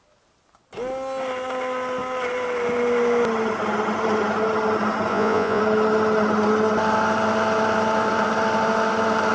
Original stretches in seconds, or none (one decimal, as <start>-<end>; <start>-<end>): 0.0-5.1; 5.6-9.3